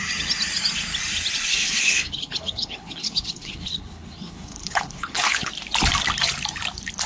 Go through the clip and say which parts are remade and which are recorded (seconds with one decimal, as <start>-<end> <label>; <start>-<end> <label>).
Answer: 0.0-1.5 recorded; 1.5-5.5 remade; 5.5-7.1 recorded